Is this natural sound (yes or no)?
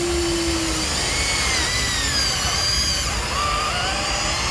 yes